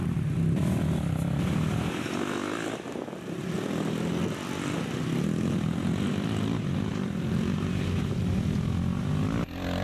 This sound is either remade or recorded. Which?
recorded